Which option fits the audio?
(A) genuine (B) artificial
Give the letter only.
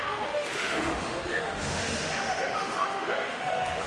B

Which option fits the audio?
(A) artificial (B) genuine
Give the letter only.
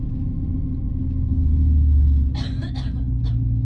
B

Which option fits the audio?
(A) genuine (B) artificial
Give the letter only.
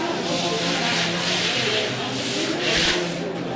A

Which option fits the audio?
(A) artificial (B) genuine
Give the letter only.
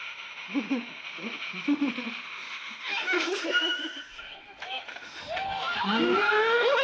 A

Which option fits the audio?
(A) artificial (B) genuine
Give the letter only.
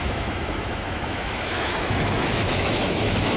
A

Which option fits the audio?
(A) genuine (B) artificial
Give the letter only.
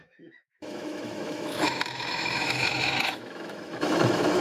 B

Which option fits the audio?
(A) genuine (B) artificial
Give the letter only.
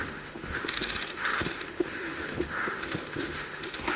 B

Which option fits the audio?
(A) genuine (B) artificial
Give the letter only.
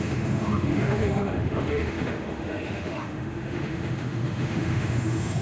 B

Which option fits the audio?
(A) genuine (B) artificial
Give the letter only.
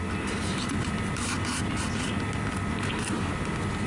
A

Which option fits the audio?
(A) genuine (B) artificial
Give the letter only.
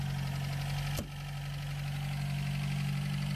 A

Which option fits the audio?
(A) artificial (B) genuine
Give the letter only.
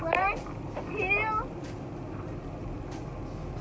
B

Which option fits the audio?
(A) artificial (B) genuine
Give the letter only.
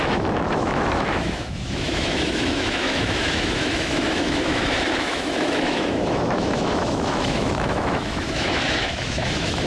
A